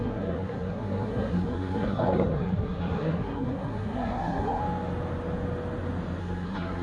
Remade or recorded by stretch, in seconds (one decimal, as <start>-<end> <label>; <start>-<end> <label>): 0.0-4.6 remade; 4.6-6.2 recorded; 6.2-6.8 remade